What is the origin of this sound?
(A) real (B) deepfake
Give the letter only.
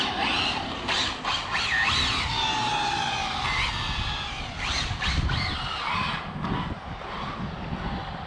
A